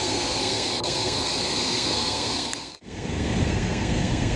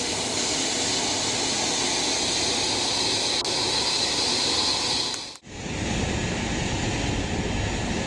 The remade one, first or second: first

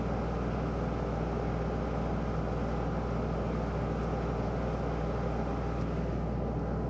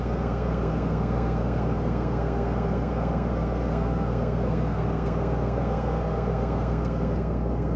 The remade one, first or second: second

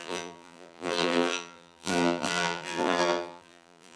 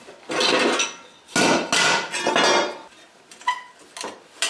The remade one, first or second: first